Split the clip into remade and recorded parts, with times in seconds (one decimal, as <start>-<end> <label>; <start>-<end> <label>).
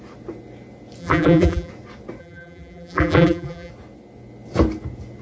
0.0-1.0 recorded; 1.0-1.7 remade; 1.7-2.2 recorded; 2.2-3.7 remade; 3.7-5.2 recorded